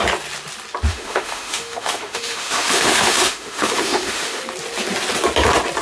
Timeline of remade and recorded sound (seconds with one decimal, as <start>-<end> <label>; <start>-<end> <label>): 0.0-0.9 recorded; 0.9-4.4 remade; 4.4-5.8 recorded